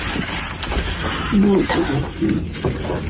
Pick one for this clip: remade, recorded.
recorded